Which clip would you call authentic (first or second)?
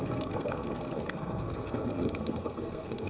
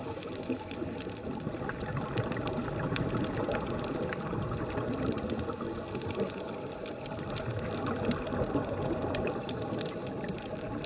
second